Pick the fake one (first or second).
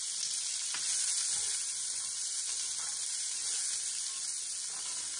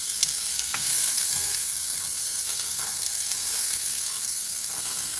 second